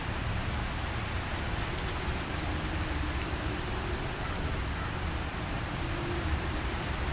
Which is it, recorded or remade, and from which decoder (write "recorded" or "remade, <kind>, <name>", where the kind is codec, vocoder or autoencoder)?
remade, vocoder, BigVGAN v2